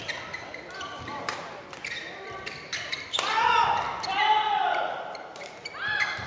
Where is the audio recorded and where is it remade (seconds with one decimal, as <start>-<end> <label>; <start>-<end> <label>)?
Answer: 0.0-6.3 recorded